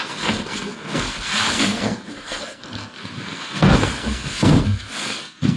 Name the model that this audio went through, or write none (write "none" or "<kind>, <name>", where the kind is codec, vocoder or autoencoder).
codec, SNAC